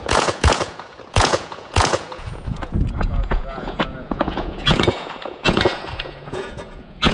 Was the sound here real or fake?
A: fake